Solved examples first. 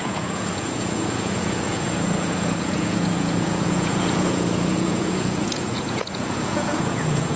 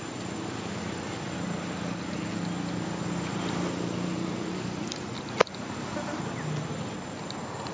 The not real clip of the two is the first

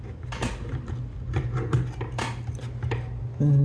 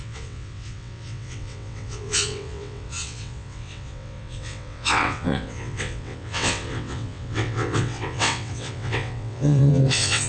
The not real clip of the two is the second